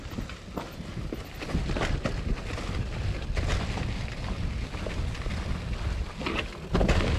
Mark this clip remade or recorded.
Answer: recorded